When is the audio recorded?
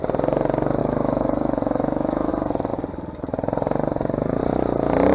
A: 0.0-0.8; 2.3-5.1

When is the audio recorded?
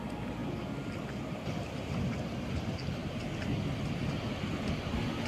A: 0.0-5.3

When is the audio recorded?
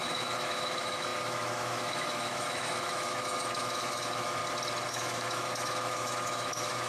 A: 4.4-4.9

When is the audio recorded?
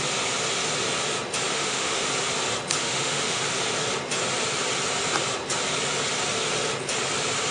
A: 0.0-1.5; 2.1-2.8; 3.4-7.5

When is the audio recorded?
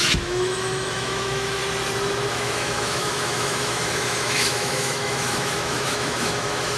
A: 1.6-2.3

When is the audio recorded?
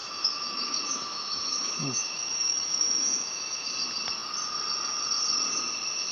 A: 3.7-6.1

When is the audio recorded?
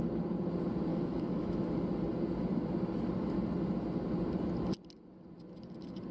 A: 0.0-0.9; 1.7-6.1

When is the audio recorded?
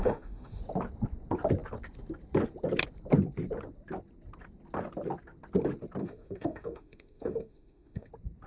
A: 0.6-6.0; 8.1-8.5